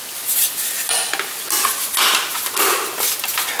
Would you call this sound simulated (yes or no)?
no